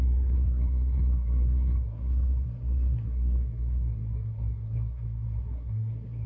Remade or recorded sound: remade